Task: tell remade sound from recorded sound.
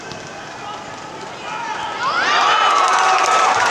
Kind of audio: recorded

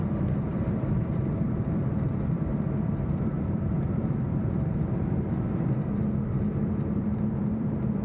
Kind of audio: remade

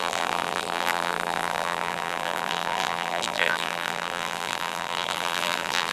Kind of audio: remade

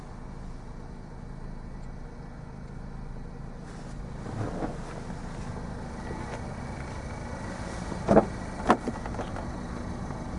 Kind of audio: recorded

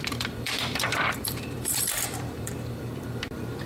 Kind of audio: remade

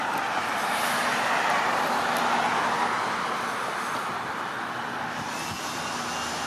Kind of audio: recorded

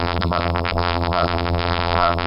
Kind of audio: remade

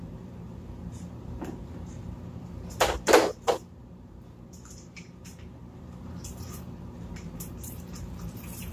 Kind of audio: remade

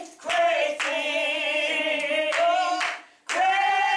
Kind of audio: recorded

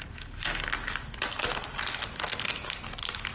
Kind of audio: recorded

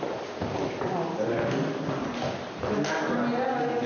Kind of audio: recorded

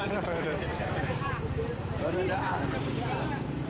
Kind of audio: remade